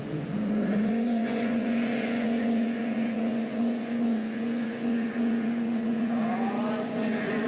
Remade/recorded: remade